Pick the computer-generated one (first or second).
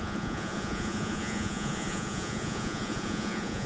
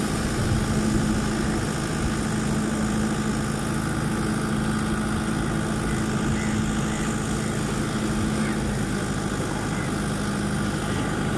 first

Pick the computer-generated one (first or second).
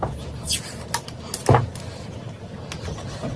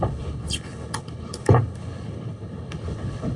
second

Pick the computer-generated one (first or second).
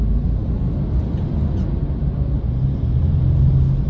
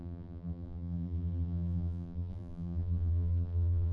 second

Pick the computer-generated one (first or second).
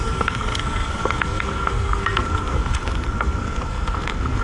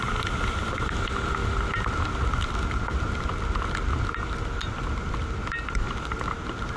first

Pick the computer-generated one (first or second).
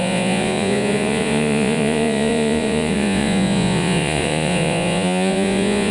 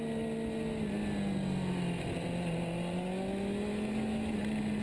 first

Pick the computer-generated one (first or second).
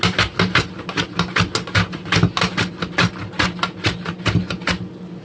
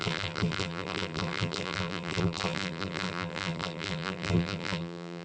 second